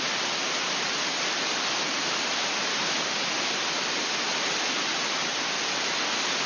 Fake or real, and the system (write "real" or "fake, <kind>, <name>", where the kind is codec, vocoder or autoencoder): real